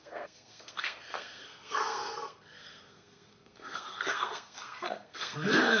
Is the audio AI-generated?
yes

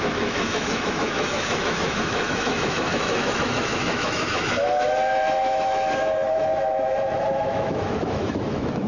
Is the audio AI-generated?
yes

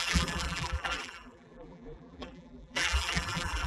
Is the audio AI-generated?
yes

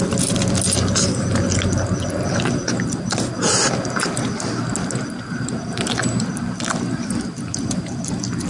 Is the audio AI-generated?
no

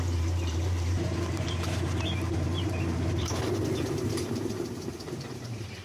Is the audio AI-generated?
yes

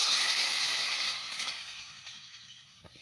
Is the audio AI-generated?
yes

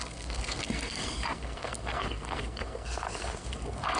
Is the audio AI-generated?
yes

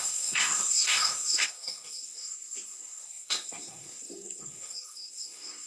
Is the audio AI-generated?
yes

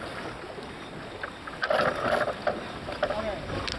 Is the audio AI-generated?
no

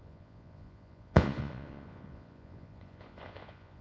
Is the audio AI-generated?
yes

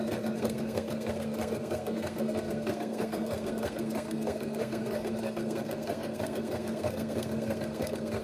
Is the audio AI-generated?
yes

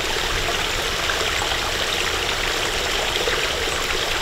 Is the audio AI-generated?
no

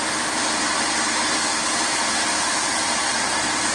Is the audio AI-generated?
no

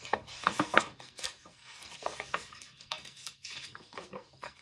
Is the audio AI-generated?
yes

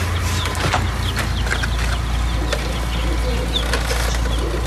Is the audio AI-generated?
no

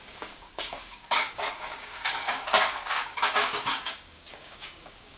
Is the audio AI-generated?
yes